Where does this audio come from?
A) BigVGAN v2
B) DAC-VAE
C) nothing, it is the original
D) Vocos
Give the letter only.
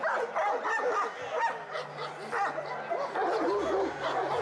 C